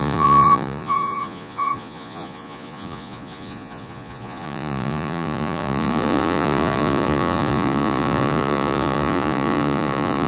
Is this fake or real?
fake